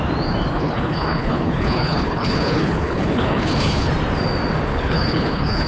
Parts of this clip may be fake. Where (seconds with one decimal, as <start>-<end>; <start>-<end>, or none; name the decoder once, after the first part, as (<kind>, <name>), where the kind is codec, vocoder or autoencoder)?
0.5-3.9 (codec, HILCodec); 4.7-5.7